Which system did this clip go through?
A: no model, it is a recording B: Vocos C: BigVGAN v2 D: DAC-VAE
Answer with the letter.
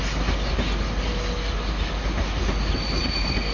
A